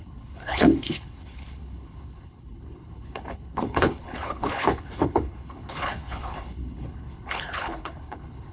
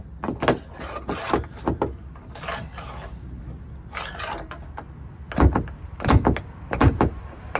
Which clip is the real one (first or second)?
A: second